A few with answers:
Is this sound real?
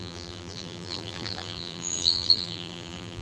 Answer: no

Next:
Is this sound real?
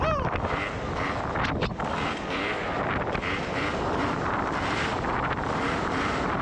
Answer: no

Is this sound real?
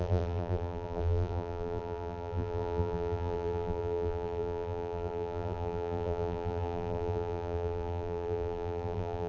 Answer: no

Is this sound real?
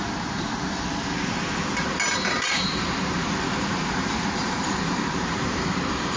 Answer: no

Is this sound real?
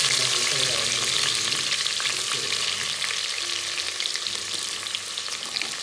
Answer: yes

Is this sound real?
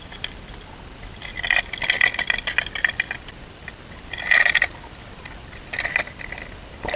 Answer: yes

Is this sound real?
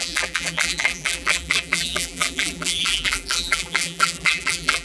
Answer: no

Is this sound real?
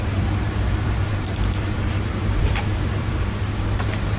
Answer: no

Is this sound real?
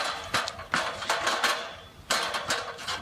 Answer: yes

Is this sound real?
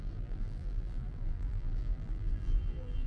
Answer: no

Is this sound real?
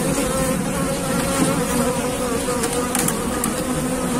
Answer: yes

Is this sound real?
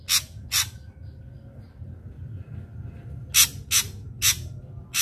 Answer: yes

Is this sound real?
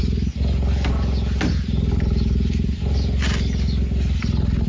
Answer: yes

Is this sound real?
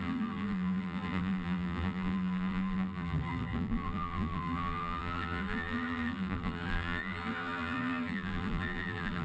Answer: no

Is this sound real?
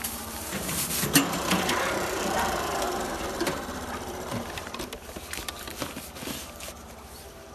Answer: no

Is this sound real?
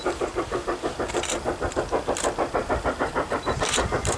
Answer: no